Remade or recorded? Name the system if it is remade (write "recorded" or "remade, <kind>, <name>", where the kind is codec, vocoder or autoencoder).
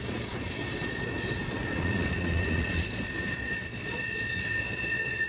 remade, vocoder, Vocos